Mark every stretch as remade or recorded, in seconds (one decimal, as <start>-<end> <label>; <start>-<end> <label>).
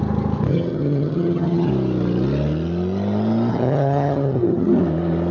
0.0-0.5 recorded; 0.5-1.7 remade; 1.7-3.5 recorded; 3.5-4.8 remade; 4.8-5.3 recorded